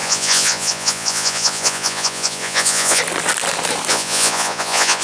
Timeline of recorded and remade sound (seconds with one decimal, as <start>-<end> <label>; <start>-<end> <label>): 0.0-3.0 remade; 3.0-3.9 recorded; 3.9-5.0 remade